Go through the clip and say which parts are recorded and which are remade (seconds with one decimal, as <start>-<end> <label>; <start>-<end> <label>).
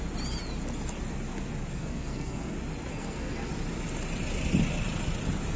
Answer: 0.0-1.7 recorded; 1.7-2.5 remade; 2.5-2.9 recorded; 2.9-3.5 remade; 3.5-5.6 recorded